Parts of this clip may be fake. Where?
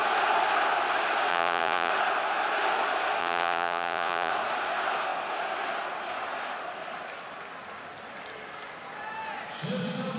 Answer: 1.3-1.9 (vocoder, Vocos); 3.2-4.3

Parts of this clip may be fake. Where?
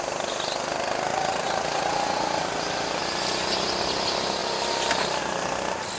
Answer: 1.1-2.4 (vocoder, Vocos)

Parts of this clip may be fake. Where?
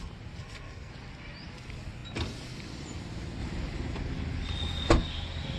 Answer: 0.4-0.9 (codec, SNAC)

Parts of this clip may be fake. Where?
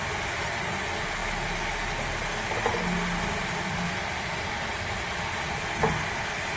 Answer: 1.2-5.2 (vocoder, BigVGAN v2)